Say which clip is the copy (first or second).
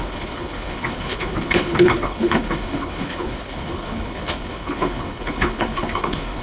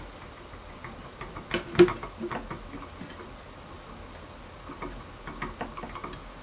first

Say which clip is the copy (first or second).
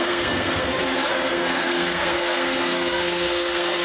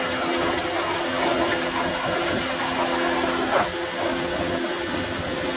first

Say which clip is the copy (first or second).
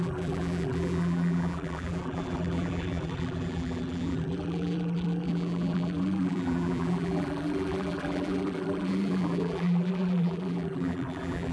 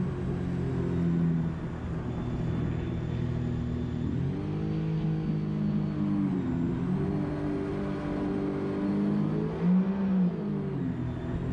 first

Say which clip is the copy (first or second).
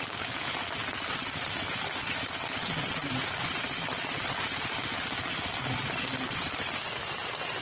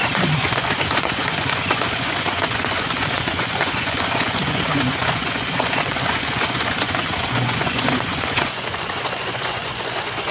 second